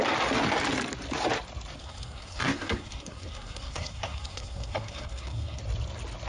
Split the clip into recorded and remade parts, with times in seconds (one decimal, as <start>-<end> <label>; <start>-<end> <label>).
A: 0.0-1.8 recorded; 1.8-5.6 remade; 5.6-6.3 recorded

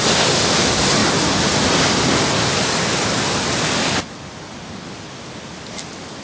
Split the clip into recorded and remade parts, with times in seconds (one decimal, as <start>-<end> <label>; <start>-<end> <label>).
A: 0.0-6.2 recorded